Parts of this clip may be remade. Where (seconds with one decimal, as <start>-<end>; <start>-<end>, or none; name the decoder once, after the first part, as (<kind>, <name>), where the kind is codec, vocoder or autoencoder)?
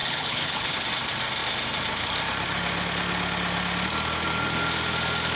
0.0-0.7 (codec, HILCodec)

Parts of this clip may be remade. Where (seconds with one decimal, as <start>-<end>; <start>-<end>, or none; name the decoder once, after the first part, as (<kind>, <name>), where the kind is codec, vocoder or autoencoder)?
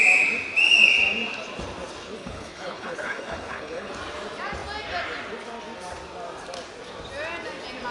2.2-3.9 (codec, HILCodec)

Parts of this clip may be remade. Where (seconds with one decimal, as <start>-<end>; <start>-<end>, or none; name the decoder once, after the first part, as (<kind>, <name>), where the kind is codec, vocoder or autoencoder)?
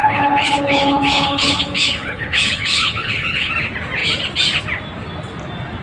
0.0-3.5 (codec, HILCodec)